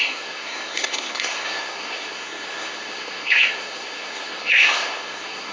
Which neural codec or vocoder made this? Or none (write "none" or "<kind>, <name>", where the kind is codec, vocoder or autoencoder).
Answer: codec, SNAC